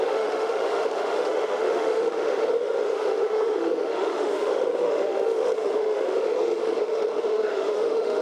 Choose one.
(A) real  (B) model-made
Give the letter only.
B